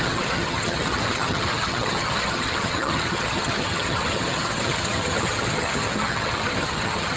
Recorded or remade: remade